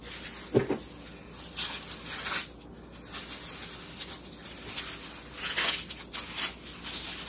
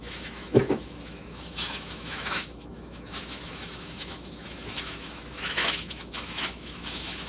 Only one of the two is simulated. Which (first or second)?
second